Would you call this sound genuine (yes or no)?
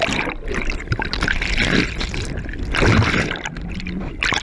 yes